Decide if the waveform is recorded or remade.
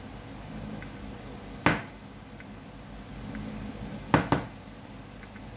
recorded